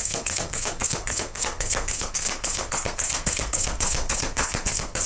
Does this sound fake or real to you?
fake